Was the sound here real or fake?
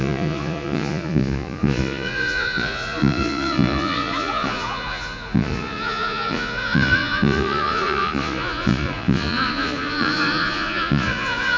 fake